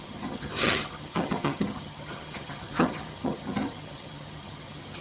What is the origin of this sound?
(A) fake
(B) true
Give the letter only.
A